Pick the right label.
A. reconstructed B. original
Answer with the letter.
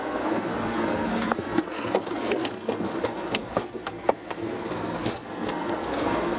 A